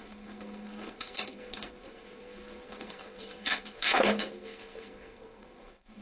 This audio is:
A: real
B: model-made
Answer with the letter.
B